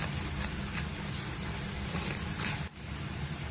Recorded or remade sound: recorded